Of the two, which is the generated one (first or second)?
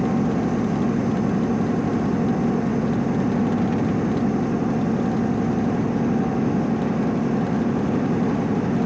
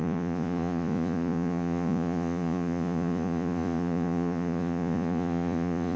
second